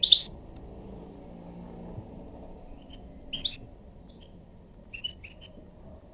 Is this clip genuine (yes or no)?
yes